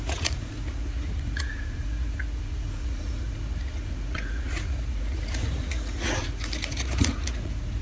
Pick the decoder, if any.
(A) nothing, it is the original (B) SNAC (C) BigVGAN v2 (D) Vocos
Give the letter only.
D